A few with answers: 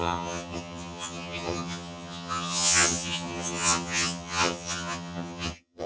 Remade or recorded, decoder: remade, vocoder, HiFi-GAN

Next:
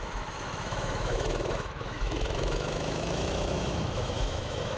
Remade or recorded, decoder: remade, autoencoder, DAC-VAE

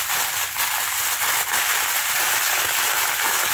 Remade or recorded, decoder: recorded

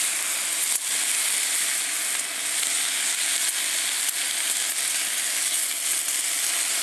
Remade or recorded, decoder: recorded